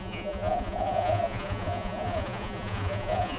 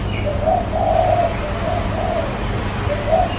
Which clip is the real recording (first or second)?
second